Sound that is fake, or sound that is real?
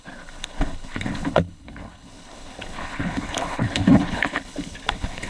fake